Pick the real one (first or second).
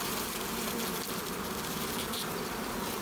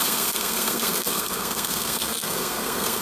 first